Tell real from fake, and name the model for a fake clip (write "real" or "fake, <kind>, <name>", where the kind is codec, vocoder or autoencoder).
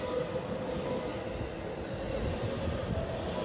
real